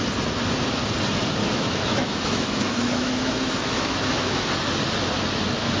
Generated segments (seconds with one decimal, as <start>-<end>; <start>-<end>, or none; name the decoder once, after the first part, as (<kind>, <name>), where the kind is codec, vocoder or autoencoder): 1.4-4.5 (autoencoder, DAC-VAE)